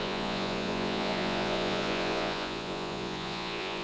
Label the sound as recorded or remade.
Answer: remade